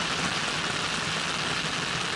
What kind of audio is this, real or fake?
real